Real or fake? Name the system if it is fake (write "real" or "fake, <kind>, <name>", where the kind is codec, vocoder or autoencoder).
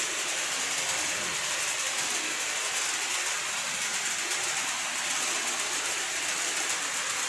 real